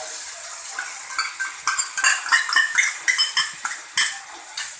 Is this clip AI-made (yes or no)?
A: no